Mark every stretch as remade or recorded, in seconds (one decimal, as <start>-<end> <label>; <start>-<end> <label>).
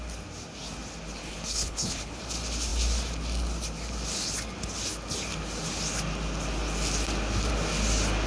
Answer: 0.0-1.2 recorded; 1.2-2.2 remade; 2.2-8.3 recorded